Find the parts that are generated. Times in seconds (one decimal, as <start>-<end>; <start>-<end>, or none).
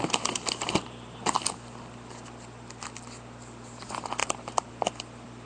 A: 4.2-4.7